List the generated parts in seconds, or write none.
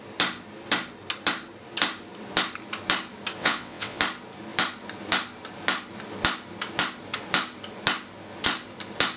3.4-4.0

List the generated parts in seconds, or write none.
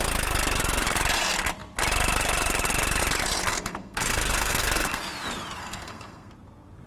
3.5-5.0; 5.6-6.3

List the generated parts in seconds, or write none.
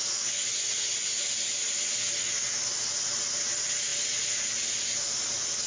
0.0-5.7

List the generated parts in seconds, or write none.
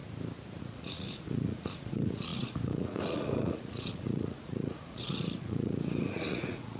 0.6-6.8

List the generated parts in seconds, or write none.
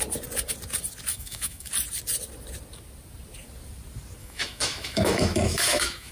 1.1-1.7; 4.2-6.1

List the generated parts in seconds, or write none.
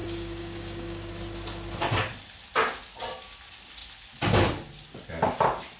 0.0-1.1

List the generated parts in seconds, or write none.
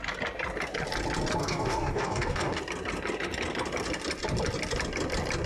1.4-2.6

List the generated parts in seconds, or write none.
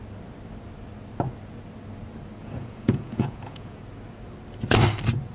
2.4-3.8